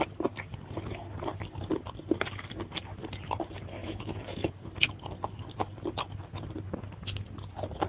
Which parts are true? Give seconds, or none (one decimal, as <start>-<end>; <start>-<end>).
0.0-3.8; 4.5-7.9